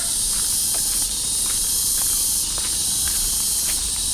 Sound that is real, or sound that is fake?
real